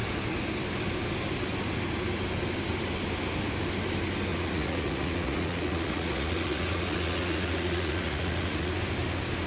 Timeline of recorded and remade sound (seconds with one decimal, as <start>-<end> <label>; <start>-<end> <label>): 0.0-4.3 recorded; 4.3-8.7 remade; 8.7-9.5 recorded